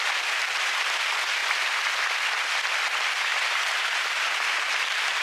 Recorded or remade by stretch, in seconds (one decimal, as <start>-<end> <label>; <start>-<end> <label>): 0.0-3.3 recorded; 3.3-5.2 remade